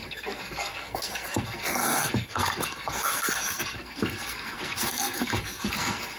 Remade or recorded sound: remade